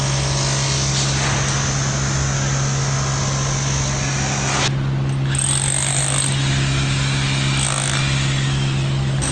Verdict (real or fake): real